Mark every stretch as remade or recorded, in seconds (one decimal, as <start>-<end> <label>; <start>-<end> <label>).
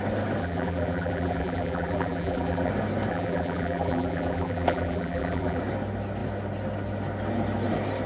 0.0-0.4 recorded; 0.4-2.7 remade; 2.7-3.1 recorded; 3.1-5.6 remade; 5.6-8.1 recorded